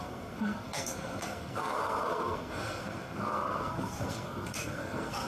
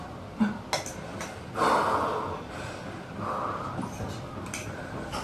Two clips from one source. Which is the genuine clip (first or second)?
second